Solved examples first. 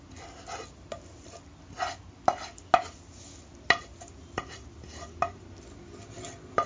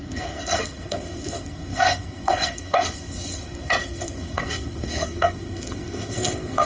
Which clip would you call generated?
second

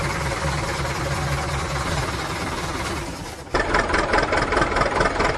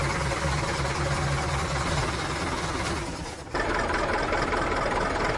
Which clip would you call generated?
first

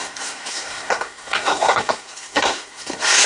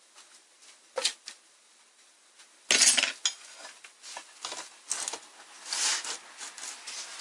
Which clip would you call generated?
first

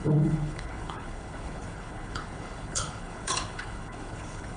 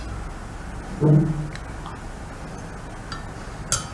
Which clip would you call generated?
first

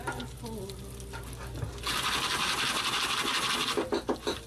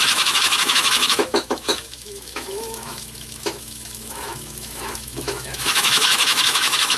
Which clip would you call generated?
second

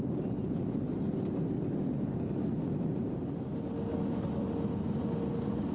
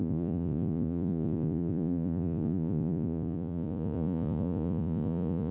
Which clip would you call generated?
second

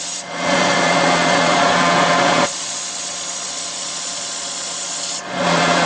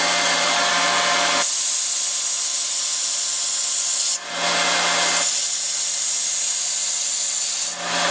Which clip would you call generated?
first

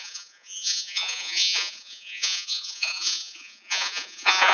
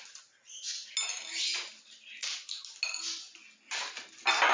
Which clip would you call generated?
first